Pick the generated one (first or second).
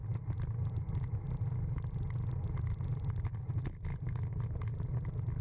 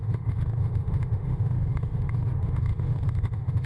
second